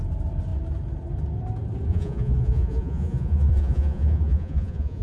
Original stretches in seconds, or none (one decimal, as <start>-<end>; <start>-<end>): 0.0-1.9